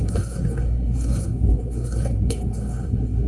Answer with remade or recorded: remade